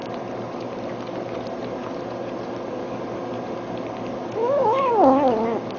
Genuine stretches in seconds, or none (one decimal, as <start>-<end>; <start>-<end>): 0.0-4.4; 4.9-5.8